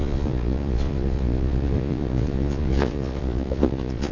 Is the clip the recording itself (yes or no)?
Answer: no